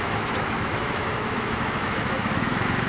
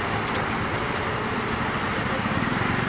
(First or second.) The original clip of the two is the second